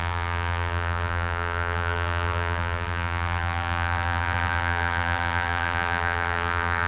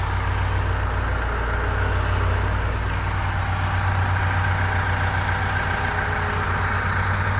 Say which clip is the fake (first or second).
first